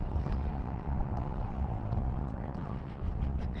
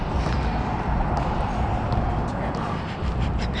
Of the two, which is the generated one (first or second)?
first